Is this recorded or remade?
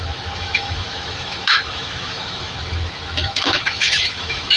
remade